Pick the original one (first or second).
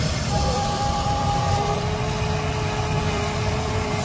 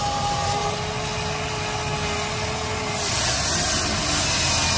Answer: second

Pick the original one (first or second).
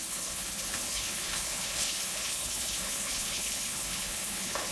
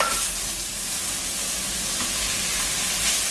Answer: second